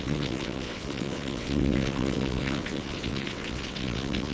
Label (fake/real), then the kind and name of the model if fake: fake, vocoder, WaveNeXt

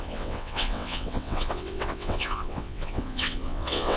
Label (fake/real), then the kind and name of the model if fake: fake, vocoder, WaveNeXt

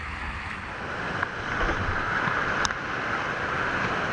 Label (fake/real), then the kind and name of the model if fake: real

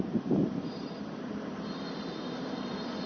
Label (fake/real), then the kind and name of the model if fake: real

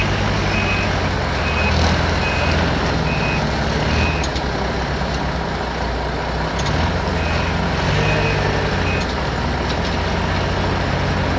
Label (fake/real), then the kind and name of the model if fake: real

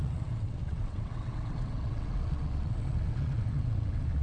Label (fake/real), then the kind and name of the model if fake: fake, vocoder, WaveNeXt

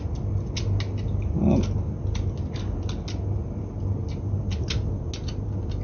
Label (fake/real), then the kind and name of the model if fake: real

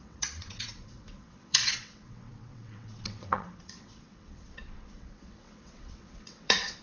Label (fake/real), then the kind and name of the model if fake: fake, vocoder, WaveNeXt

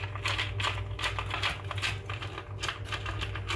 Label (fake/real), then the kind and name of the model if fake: real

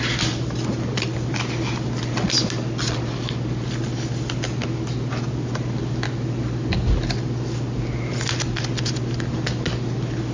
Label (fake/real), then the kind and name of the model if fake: real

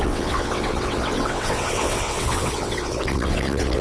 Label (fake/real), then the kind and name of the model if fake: fake, vocoder, WaveNeXt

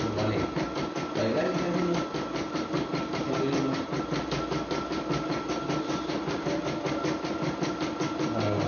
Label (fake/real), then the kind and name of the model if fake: real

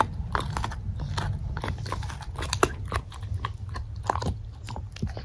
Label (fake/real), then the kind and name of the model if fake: real